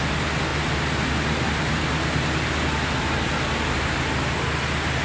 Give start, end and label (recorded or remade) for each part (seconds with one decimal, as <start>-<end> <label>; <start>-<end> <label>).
0.0-5.0 recorded